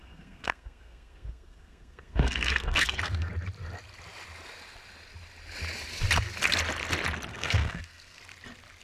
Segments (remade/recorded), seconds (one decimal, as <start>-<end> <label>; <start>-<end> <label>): 0.0-3.3 remade; 3.3-7.3 recorded; 7.3-8.2 remade; 8.2-8.8 recorded